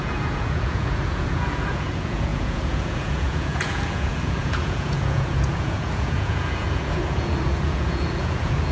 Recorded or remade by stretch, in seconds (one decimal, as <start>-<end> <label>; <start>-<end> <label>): 0.0-8.7 remade